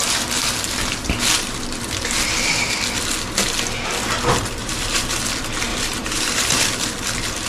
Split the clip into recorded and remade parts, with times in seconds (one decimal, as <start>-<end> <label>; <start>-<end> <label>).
0.0-4.6 recorded; 4.6-5.2 remade; 5.2-5.7 recorded; 5.7-6.6 remade; 6.6-7.5 recorded